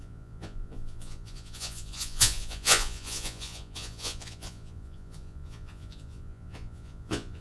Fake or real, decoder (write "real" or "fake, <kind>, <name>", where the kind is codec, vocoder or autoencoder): fake, vocoder, Vocos